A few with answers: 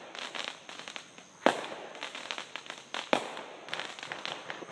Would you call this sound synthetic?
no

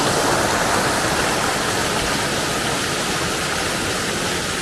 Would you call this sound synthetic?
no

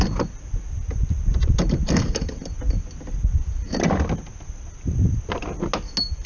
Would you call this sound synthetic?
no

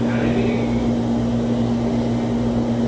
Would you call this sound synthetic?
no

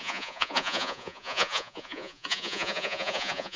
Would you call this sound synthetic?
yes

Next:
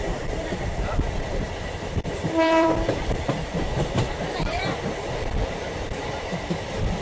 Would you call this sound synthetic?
yes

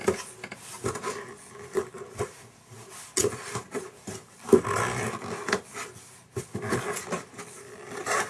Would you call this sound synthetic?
no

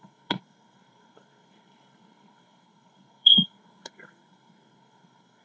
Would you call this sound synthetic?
yes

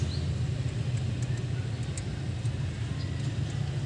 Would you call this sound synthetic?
no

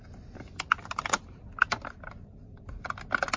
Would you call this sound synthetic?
no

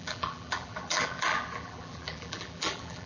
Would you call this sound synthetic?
yes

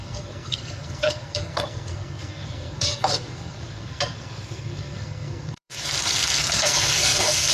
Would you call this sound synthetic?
yes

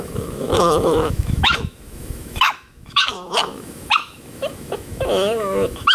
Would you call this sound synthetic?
yes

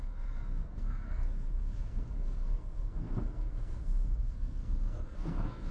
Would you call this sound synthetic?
yes